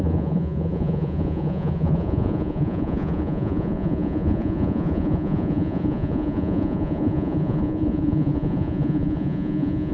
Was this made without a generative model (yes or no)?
no